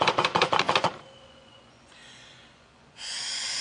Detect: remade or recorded remade